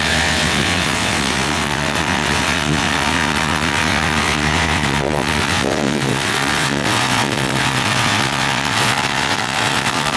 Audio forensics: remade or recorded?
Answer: remade